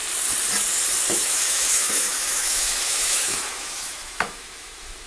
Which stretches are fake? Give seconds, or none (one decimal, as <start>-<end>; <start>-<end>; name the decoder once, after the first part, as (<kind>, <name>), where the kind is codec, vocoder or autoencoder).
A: 1.1-5.1 (autoencoder, DAC-VAE)